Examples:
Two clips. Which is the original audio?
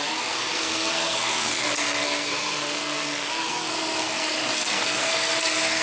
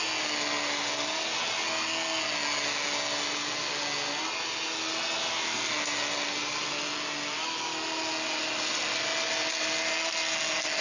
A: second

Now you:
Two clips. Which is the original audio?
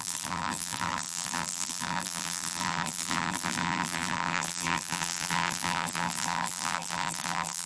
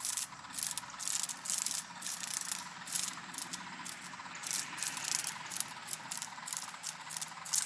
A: second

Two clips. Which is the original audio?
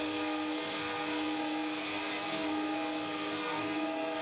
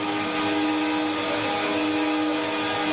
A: second